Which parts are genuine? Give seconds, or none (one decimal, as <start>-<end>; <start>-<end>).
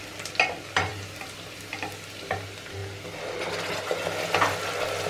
0.0-0.9; 2.2-5.1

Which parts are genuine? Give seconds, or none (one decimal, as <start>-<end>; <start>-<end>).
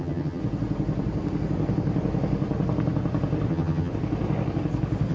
0.4-3.5; 3.9-5.1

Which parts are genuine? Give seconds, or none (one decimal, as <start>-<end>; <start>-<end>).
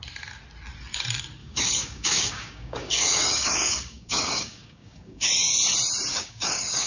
0.0-1.4; 5.5-6.1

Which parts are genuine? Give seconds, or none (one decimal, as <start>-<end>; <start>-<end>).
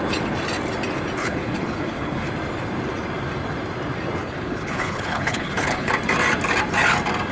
0.0-1.2; 2.3-4.2; 5.9-7.3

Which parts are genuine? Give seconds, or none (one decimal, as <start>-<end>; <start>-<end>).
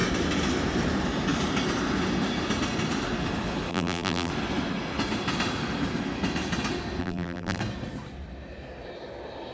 0.0-3.7; 4.3-7.0; 7.6-9.5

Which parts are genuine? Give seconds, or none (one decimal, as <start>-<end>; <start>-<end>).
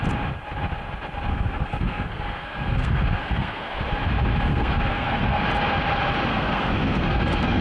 0.0-1.3; 3.8-4.5; 5.4-6.3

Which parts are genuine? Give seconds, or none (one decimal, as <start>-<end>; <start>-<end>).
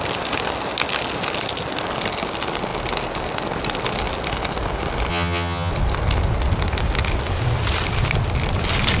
0.0-5.1; 5.7-9.0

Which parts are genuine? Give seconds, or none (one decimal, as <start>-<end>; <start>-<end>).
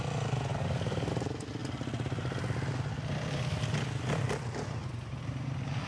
0.0-0.5; 1.1-5.9